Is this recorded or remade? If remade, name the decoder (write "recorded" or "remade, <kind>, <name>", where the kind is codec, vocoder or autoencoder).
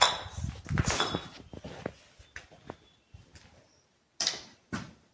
recorded